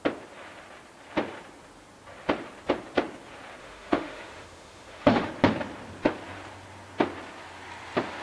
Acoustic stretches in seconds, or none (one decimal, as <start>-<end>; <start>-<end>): 0.0-3.6; 5.3-8.2